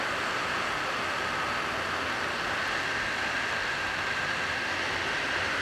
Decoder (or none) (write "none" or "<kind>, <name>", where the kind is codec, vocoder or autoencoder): none